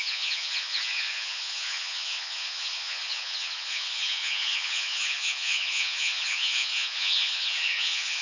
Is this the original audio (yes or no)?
no